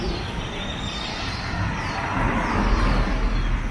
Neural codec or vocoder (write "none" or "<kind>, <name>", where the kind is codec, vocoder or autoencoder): none